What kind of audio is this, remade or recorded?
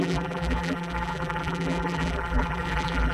remade